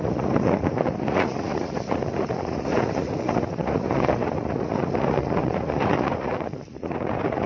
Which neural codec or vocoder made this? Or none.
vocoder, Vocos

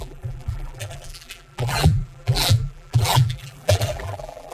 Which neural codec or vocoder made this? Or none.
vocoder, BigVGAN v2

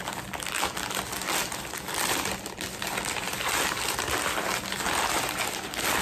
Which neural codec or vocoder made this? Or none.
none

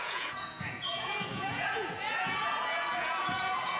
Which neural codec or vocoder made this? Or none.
vocoder, Vocos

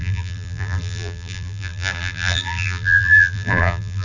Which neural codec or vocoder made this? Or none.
vocoder, BigVGAN v2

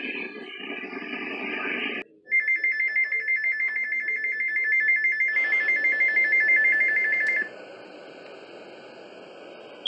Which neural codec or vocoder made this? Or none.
none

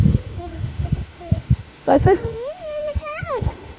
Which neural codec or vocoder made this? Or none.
autoencoder, DAC-VAE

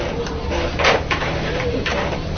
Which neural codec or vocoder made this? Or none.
none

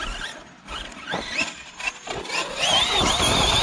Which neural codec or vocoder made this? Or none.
none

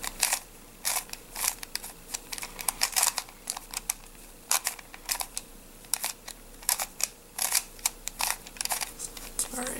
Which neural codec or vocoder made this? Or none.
vocoder, BigVGAN v2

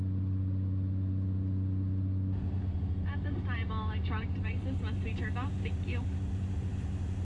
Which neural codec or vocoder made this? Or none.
none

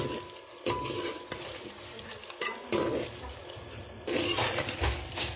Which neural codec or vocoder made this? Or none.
none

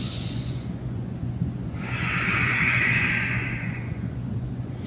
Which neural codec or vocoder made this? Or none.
vocoder, Vocos